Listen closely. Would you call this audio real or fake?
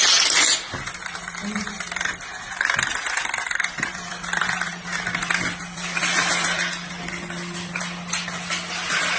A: real